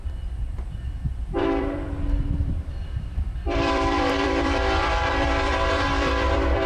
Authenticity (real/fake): fake